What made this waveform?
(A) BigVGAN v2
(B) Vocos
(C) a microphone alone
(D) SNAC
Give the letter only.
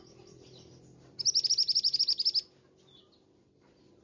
C